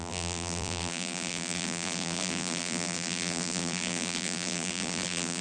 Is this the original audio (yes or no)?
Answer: no